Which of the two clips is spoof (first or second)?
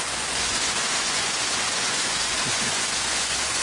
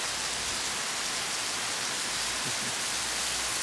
first